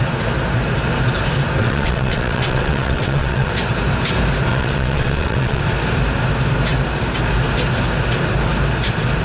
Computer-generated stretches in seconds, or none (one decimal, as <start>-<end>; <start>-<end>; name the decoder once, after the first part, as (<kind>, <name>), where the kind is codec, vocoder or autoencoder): 1.6-3.5 (vocoder, WaveNeXt); 4.5-5.6